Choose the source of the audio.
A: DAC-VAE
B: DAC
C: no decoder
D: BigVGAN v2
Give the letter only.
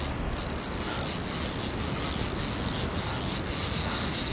C